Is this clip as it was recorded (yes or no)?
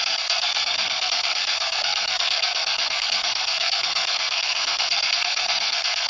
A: no